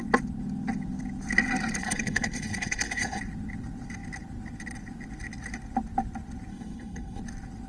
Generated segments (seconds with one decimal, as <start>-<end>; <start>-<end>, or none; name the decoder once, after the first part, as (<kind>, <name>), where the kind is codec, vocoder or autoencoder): 1.8-3.2 (codec, HILCodec); 6.5-7.2